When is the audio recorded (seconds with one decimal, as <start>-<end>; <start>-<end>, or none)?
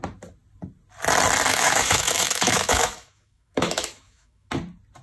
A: 0.0-1.5; 4.5-5.0